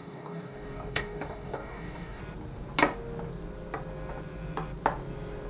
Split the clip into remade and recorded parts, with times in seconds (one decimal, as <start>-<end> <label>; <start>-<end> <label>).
0.0-2.2 remade; 2.2-5.5 recorded